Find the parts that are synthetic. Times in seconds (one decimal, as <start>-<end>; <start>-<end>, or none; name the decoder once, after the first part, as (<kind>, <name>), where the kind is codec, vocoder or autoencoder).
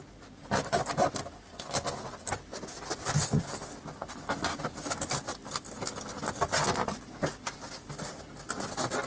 none